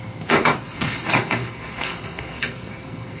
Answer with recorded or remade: remade